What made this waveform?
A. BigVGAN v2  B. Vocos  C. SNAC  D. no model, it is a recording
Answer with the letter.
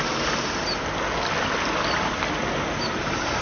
D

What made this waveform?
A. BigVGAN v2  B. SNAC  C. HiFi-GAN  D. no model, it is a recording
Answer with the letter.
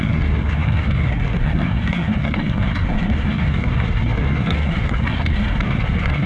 B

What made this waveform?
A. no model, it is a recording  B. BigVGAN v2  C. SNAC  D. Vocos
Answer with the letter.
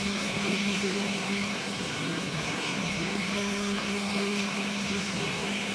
C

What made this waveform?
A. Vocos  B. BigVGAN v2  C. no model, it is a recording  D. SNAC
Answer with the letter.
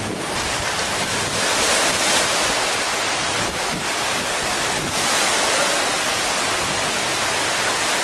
C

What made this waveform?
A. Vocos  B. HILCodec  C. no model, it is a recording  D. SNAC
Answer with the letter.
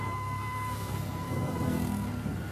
D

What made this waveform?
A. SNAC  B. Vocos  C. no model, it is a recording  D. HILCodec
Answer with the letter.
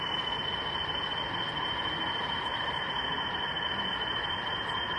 C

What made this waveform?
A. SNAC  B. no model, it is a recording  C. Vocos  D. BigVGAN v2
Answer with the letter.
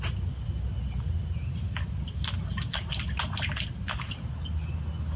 B